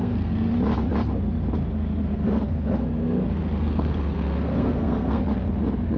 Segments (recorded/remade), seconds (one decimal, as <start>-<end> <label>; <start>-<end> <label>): 0.0-0.5 remade; 0.5-1.7 recorded; 1.7-5.2 remade; 5.2-6.0 recorded

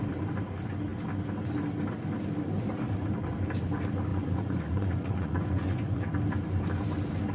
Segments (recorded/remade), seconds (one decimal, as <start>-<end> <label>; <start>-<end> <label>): 0.0-4.1 recorded; 4.1-6.0 remade; 6.0-7.3 recorded